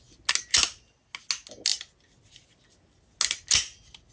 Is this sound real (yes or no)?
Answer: yes